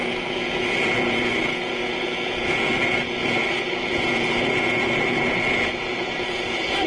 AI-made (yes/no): yes